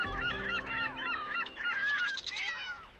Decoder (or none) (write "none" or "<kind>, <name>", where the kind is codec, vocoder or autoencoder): autoencoder, DAC-VAE